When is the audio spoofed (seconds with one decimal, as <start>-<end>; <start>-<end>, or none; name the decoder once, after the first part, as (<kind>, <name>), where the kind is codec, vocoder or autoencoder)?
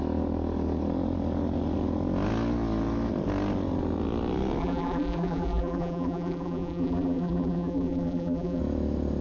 4.6-8.6 (vocoder, BigVGAN v2)